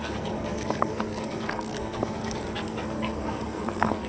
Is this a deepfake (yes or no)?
yes